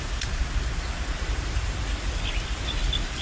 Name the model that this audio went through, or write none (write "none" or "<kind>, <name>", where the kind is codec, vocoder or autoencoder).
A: none